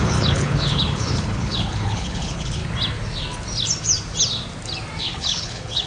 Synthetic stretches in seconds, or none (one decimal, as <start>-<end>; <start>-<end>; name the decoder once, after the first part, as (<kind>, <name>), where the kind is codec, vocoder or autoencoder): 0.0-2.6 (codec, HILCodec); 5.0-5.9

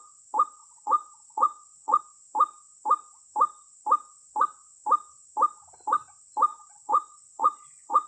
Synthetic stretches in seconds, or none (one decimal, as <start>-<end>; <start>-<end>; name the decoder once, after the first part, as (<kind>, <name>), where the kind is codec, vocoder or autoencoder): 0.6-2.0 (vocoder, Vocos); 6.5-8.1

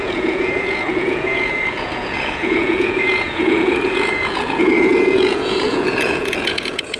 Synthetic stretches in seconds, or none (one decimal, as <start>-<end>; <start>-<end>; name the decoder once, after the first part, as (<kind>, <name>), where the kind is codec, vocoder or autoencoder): 0.0-7.0 (vocoder, Vocos)

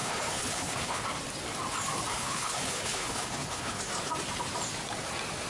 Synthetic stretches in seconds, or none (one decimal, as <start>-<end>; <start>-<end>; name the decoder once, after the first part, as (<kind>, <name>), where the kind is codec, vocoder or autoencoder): 0.0-1.0 (codec, HILCodec); 2.1-3.8

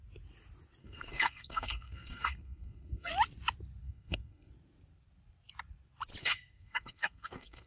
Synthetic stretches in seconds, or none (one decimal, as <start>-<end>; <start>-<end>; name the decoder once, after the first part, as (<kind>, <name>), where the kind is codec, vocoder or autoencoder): 0.8-3.1 (codec, SNAC); 3.8-4.5; 6.2-7.7

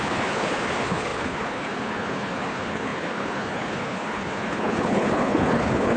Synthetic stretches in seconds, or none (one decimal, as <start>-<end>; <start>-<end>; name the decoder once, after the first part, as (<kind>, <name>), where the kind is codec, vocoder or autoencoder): 0.0-6.0 (codec, HILCodec)